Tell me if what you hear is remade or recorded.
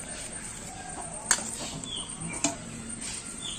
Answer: recorded